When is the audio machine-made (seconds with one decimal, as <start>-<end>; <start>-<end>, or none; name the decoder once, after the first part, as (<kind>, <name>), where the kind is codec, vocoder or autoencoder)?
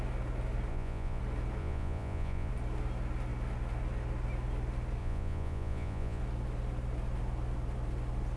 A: 0.7-1.2 (vocoder, Vocos); 1.6-2.5; 5.0-6.2